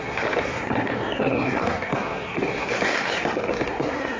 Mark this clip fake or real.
fake